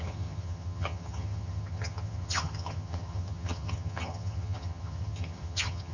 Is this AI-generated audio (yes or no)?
yes